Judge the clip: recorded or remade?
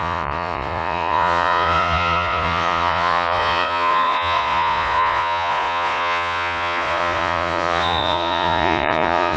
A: remade